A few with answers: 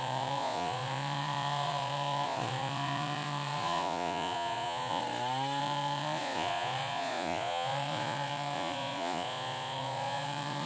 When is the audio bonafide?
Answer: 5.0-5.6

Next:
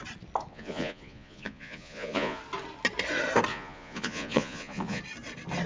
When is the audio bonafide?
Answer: 0.0-0.5; 2.4-3.5; 5.0-5.7

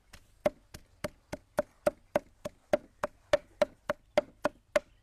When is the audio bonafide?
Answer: 0.0-5.0

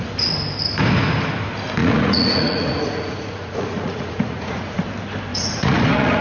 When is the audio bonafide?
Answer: 0.0-1.8; 4.8-5.3